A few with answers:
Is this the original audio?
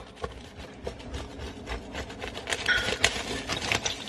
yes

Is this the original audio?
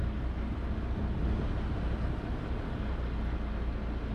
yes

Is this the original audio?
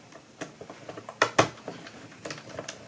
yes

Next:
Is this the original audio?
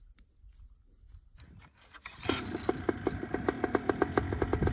yes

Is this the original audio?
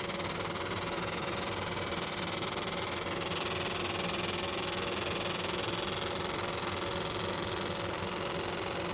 yes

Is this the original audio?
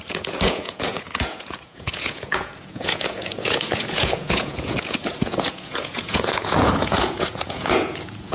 no